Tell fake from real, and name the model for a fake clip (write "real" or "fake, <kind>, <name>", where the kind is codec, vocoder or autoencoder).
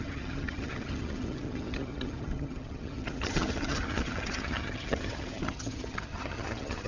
fake, vocoder, HiFi-GAN